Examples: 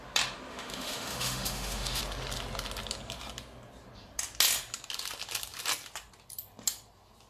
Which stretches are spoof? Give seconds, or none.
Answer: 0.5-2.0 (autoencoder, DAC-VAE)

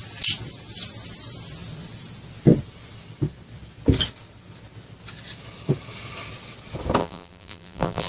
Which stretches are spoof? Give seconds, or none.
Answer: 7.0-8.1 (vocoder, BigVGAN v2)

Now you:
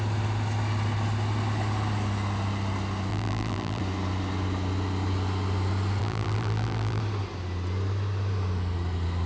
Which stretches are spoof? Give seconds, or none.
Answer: 3.1-3.8 (vocoder, BigVGAN v2); 6.0-7.0

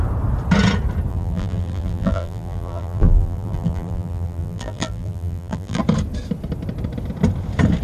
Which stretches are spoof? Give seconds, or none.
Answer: 1.1-5.8 (vocoder, BigVGAN v2)

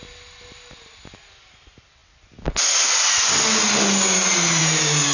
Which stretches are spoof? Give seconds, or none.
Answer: none